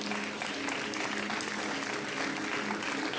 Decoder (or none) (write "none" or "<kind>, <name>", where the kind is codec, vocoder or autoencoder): none